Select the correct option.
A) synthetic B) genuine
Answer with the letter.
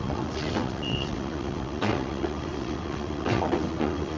A